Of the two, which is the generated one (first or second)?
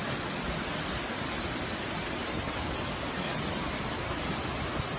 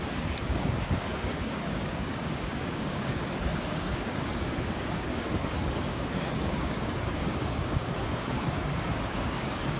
second